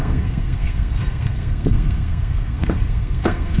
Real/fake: fake